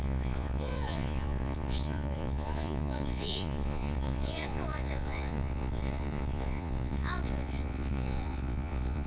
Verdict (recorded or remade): remade